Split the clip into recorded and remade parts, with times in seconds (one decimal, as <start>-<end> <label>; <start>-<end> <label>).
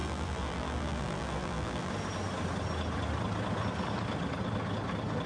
0.0-1.9 remade; 1.9-5.3 recorded